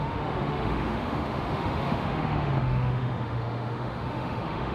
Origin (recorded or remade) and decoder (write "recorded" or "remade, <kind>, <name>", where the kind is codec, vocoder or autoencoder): remade, autoencoder, DAC-VAE